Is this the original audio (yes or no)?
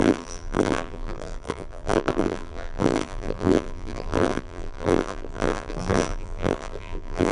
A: no